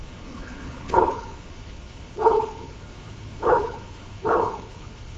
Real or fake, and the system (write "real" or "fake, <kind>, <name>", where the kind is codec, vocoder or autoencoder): fake, codec, HILCodec